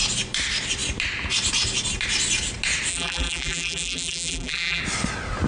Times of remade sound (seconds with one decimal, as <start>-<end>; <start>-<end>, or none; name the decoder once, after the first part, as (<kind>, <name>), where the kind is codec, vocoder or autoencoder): 2.9-4.8 (vocoder, BigVGAN v2)